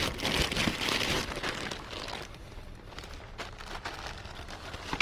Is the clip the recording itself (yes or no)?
yes